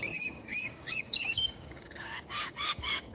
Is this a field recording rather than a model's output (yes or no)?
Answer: no